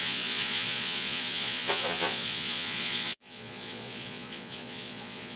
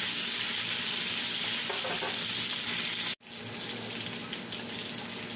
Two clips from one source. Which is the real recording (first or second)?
second